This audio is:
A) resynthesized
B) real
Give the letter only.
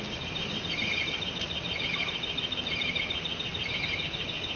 A